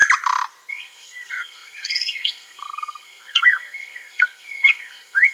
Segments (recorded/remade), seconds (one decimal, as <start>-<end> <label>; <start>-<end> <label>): 0.0-0.7 recorded; 0.7-5.3 remade